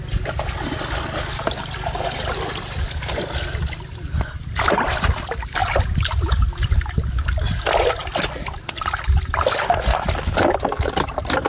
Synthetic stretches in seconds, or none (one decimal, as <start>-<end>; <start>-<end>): none